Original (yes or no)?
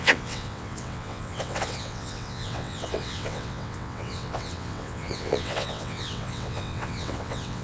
no